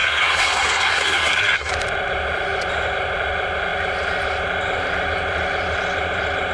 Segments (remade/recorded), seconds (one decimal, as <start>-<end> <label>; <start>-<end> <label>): 0.0-1.7 remade; 1.7-6.5 recorded